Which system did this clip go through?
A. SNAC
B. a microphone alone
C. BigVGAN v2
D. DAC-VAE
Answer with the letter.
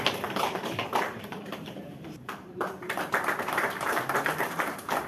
C